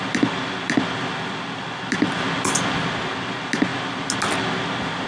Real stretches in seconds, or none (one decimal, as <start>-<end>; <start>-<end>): 0.0-5.1